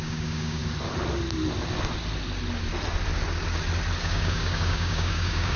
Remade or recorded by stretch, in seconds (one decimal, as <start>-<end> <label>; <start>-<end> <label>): 0.0-0.6 remade; 0.6-4.0 recorded; 4.0-5.6 remade

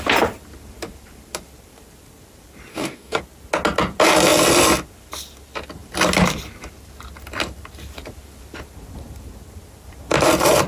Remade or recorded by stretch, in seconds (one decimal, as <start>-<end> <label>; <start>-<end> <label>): 0.0-2.7 recorded; 2.7-3.2 remade; 3.2-10.7 recorded

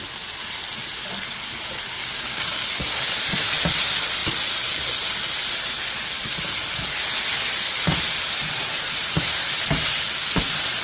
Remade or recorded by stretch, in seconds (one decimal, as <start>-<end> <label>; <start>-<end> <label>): 0.0-2.0 recorded; 2.0-3.1 remade; 3.1-10.8 recorded